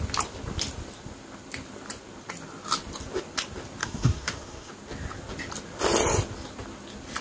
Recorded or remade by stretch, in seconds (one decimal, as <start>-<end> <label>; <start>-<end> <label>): 0.0-3.8 recorded; 3.8-4.7 remade; 4.7-7.2 recorded